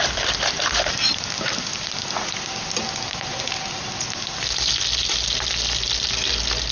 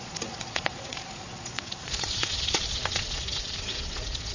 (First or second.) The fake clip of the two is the second